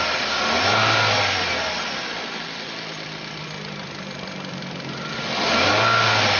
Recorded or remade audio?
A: recorded